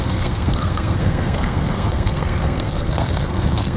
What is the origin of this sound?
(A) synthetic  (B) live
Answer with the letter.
A